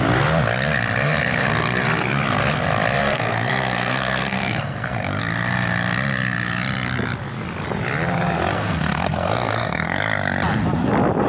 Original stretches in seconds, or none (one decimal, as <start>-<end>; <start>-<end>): 0.0-3.0; 5.2-8.5; 10.0-11.3